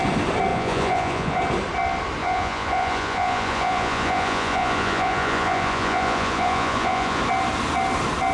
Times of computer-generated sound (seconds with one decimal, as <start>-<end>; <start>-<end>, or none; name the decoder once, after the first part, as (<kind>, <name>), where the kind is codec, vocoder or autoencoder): 0.5-1.4 (vocoder, Vocos); 2.2-7.2